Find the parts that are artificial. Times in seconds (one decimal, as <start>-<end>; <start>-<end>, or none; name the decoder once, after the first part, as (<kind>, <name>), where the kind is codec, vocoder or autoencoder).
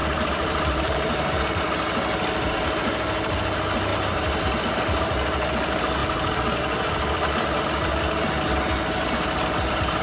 0.0-1.6 (vocoder, BigVGAN v2); 3.9-4.4